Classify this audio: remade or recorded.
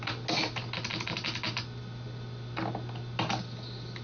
recorded